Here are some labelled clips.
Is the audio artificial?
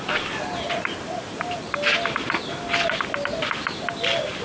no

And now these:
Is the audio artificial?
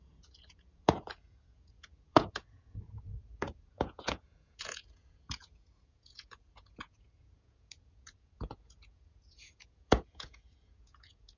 yes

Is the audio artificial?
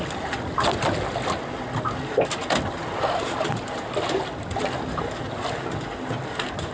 no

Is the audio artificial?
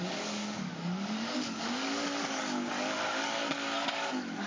yes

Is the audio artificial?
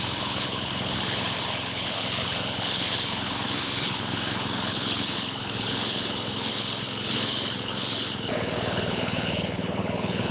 yes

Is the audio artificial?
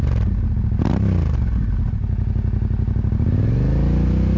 no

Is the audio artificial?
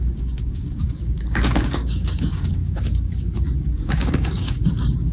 yes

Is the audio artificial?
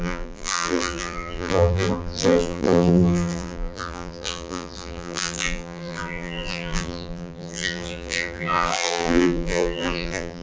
yes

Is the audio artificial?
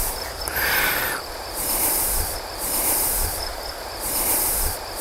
yes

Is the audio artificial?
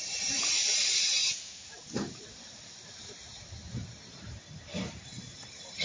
yes